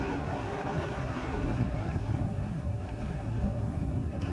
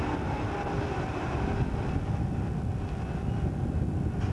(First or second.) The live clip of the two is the second